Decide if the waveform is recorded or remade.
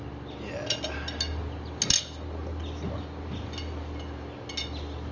recorded